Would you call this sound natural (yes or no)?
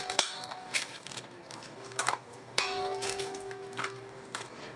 no